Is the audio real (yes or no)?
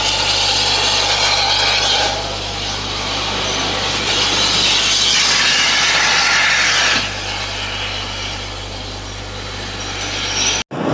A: yes